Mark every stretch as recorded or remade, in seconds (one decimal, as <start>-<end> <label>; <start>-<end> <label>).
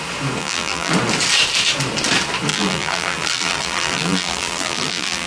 0.0-0.4 recorded; 0.4-0.9 remade; 0.9-2.5 recorded; 2.5-5.3 remade